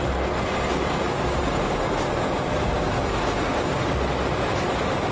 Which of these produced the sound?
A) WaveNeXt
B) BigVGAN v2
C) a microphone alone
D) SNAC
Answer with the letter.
C